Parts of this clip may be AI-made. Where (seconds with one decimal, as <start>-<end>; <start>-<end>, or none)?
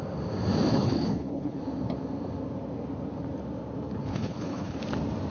0.7-1.6; 4.1-4.8